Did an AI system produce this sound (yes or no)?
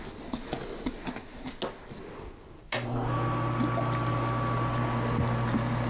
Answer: no